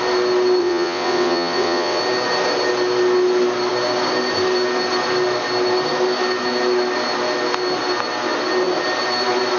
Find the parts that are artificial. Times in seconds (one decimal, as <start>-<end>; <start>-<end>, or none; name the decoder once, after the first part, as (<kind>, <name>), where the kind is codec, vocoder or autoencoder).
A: 0.6-2.0 (vocoder, WaveNeXt)